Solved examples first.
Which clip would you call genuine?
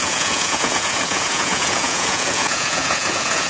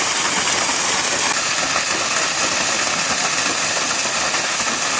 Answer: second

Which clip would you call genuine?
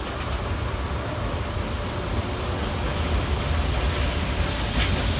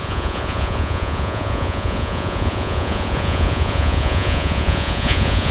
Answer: first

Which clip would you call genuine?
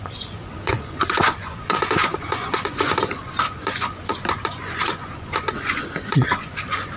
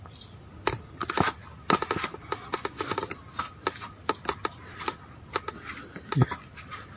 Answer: second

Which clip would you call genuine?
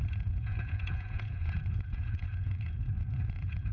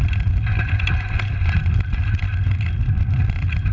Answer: second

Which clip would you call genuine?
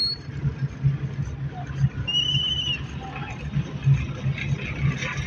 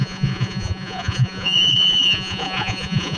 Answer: first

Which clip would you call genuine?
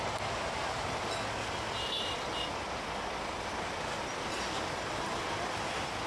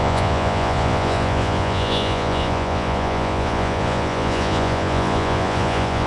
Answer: first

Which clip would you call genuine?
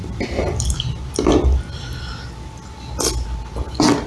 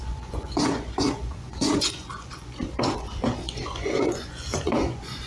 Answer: first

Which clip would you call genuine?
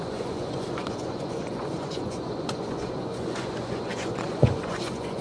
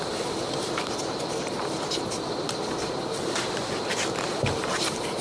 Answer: second